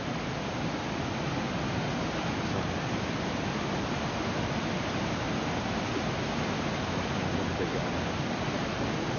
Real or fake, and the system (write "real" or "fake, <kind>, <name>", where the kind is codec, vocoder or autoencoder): real